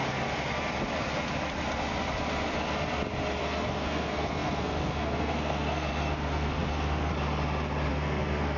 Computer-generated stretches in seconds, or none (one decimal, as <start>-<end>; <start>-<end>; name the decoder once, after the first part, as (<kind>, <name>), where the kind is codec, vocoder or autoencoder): 3.4-7.1 (codec, SNAC); 7.9-8.6